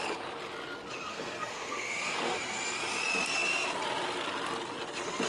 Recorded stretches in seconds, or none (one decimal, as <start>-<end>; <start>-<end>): 0.0-1.1; 2.4-5.3